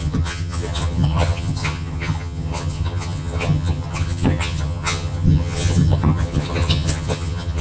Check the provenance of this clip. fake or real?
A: fake